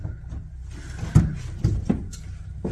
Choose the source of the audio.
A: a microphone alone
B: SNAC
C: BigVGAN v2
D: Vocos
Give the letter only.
A